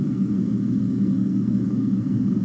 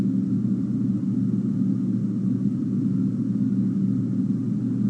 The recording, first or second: second